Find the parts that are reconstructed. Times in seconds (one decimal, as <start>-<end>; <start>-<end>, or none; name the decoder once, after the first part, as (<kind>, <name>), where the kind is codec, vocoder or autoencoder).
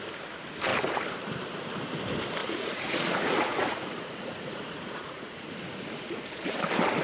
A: 2.4-6.6 (vocoder, Vocos)